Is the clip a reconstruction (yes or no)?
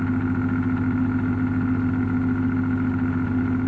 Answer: no